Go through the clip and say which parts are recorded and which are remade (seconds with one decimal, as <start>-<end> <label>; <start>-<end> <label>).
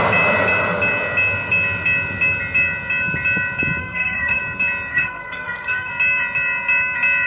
0.0-3.8 recorded; 3.8-4.4 remade; 4.4-4.9 recorded; 4.9-5.9 remade; 5.9-7.3 recorded